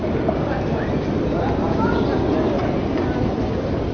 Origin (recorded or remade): recorded